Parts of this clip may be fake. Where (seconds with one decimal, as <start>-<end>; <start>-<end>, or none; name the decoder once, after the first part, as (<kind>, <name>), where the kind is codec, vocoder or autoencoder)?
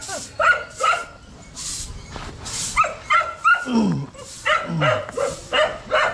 none